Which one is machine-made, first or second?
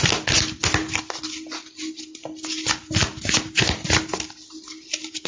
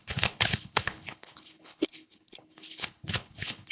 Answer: second